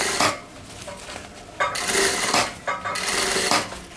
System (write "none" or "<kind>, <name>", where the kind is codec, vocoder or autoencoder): none